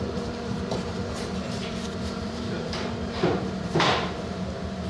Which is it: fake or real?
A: fake